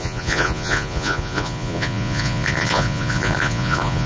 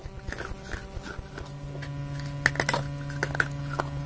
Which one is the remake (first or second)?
first